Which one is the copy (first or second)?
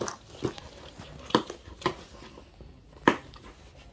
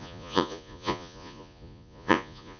second